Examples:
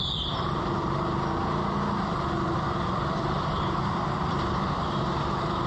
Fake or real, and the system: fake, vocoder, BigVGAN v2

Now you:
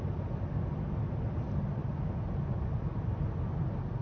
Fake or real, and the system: real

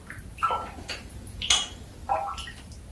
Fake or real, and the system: real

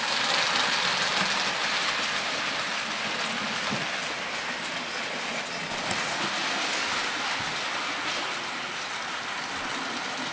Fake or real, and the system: real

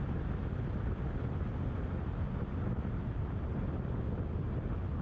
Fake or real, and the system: real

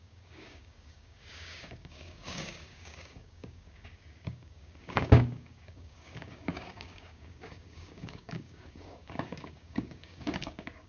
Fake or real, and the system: fake, codec, DAC